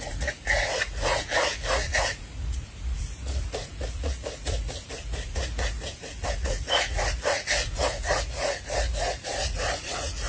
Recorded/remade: remade